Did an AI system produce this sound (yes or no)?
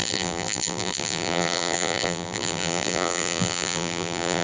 yes